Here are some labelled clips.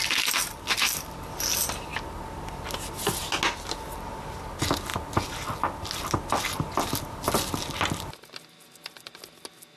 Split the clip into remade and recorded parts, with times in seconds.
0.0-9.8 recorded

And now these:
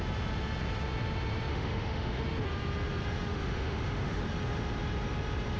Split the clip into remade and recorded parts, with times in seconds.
0.0-1.5 recorded; 1.5-2.2 remade; 2.2-3.3 recorded; 3.3-4.2 remade; 4.2-5.6 recorded

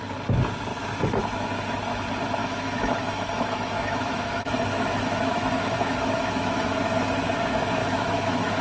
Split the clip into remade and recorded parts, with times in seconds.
0.0-2.4 recorded; 2.4-6.7 remade; 6.7-7.8 recorded; 7.8-8.6 remade

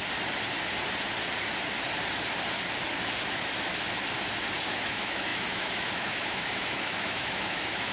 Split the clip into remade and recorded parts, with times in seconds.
0.0-4.7 recorded; 4.7-7.9 remade

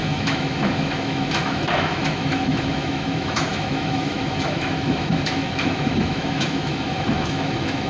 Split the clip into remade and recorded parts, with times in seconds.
0.0-7.9 remade

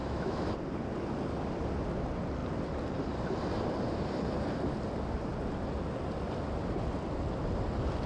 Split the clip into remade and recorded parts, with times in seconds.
0.0-0.5 remade; 0.5-8.1 recorded